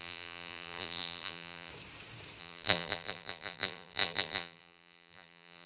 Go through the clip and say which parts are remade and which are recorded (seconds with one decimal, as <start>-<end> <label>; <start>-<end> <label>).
0.0-1.7 remade; 1.7-2.4 recorded; 2.4-5.7 remade